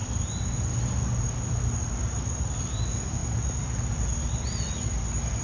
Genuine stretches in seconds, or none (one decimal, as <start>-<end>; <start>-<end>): 0.0-5.4